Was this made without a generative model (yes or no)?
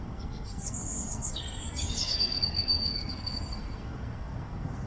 no